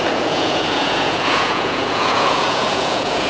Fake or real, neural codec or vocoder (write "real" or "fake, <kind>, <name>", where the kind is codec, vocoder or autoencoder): fake, vocoder, Vocos